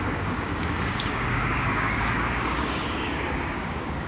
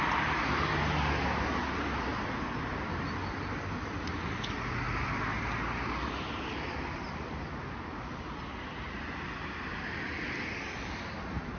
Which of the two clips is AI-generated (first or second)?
first